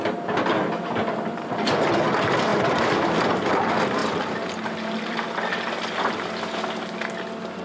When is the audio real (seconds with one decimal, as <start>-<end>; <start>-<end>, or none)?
0.0-2.5; 3.5-7.6